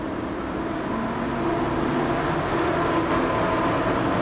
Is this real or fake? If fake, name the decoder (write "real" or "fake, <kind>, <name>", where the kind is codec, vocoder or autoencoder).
real